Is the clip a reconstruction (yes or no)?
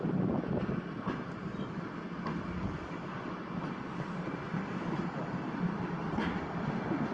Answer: no